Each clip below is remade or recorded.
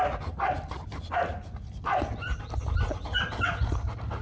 recorded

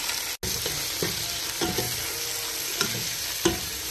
recorded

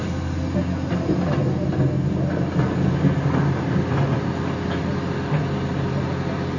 recorded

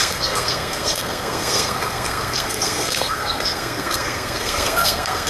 remade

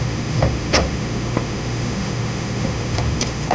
remade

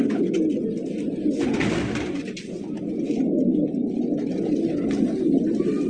recorded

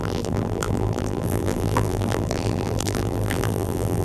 remade